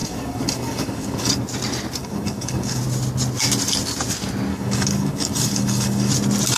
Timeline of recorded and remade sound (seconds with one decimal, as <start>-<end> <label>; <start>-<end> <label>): 0.0-1.3 remade; 1.3-2.0 recorded; 2.0-2.8 remade; 2.8-4.5 recorded; 4.5-6.1 remade; 6.1-6.6 recorded